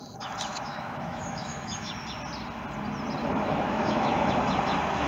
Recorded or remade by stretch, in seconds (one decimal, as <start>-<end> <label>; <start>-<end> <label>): 0.0-0.5 recorded; 0.5-1.9 remade; 1.9-3.2 recorded; 3.2-4.3 remade; 4.3-5.1 recorded